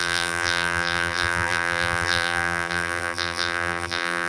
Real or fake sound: fake